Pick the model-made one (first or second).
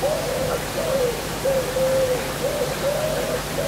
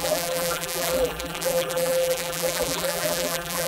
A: second